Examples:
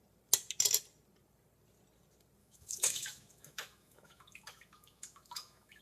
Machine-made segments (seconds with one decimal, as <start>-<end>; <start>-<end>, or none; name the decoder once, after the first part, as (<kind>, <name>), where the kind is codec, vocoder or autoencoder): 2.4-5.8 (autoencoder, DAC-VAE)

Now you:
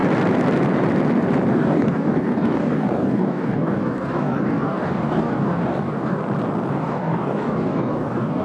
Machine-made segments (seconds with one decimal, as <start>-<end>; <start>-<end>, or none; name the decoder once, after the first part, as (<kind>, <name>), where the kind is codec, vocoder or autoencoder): 1.5-6.2 (codec, DAC); 6.7-8.4

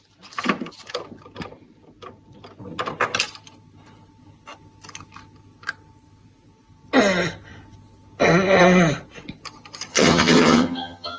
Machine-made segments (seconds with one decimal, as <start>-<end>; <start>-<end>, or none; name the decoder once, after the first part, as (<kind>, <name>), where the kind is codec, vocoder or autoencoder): 9.9-11.2 (vocoder, HiFi-GAN)

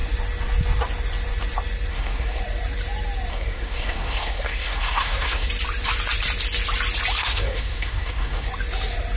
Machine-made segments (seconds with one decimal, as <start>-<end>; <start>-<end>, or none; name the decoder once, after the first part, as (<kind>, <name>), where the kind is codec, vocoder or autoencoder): 1.9-2.4 (codec, SNAC); 3.3-5.5; 7.2-8.5